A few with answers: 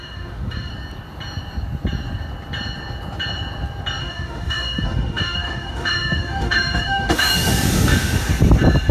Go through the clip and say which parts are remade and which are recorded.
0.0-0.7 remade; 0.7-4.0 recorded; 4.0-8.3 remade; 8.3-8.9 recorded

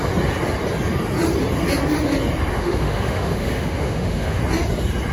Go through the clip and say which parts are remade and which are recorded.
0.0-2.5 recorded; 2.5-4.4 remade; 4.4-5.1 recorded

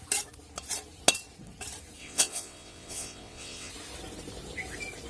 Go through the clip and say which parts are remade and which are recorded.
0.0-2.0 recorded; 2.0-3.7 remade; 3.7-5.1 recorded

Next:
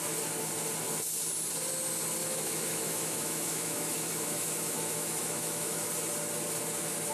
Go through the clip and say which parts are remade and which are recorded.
0.0-2.2 recorded; 2.2-5.9 remade; 5.9-7.1 recorded